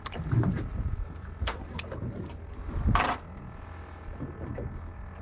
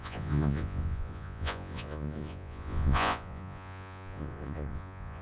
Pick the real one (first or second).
first